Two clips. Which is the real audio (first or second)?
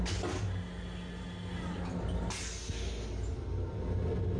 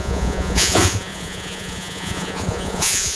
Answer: first